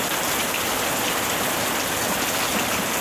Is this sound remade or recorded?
recorded